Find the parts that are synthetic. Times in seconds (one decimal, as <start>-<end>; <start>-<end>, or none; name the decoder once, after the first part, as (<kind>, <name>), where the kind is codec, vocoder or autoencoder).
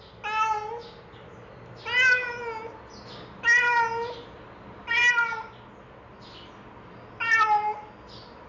none